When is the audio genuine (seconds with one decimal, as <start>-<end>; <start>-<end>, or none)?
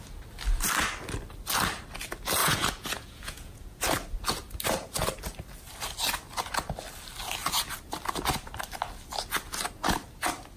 0.0-2.4; 3.8-10.6